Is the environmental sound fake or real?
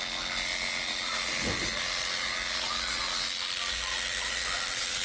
real